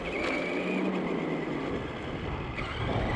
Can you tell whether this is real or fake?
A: real